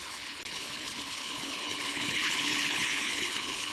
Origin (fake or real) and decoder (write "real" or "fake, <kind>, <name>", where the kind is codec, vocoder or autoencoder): fake, codec, HILCodec